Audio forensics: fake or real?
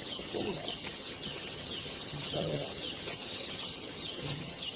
fake